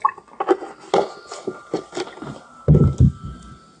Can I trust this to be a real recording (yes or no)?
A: yes